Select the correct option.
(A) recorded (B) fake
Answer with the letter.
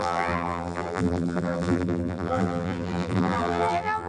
B